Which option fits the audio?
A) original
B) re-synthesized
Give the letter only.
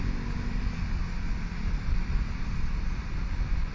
A